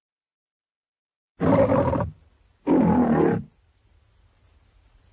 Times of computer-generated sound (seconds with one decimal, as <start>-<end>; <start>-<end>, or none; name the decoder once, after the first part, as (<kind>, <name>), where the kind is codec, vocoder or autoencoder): none